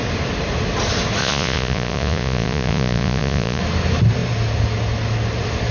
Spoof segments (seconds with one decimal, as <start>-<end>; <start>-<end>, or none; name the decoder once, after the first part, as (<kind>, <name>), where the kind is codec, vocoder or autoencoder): 1.2-3.6 (vocoder, Vocos)